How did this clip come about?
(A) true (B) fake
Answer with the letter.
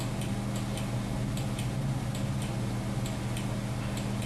A